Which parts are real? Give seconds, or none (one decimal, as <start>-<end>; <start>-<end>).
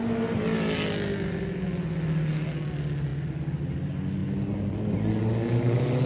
0.0-6.1